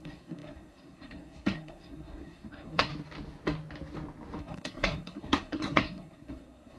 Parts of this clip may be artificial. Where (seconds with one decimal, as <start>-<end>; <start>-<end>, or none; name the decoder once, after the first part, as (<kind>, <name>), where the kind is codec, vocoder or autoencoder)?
0.0-2.9 (codec, SNAC); 4.4-6.8